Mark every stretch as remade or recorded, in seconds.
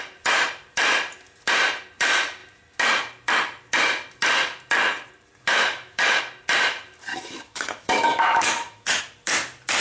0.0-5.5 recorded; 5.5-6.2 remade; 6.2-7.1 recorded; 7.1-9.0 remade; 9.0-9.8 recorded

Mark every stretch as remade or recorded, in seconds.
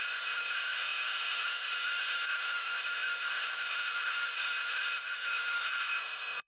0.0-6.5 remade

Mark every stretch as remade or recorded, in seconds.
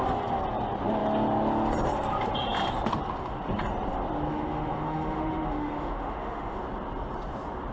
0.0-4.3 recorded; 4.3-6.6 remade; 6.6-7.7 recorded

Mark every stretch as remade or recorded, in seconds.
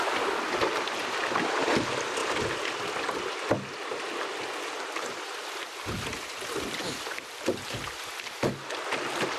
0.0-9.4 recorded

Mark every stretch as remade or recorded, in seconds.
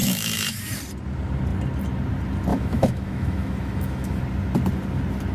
0.0-0.6 remade; 0.6-2.5 recorded; 2.5-4.2 remade; 4.2-5.3 recorded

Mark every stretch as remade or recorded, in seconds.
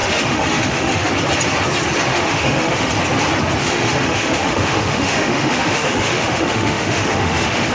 0.0-1.1 remade; 1.1-2.1 recorded; 2.1-2.9 remade; 2.9-3.6 recorded; 3.6-7.7 remade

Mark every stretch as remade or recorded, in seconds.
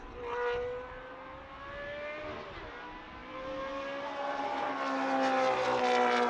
0.0-6.3 recorded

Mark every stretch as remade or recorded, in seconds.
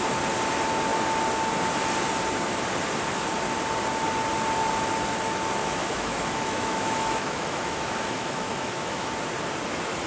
0.0-5.6 recorded; 5.6-9.1 remade; 9.1-10.1 recorded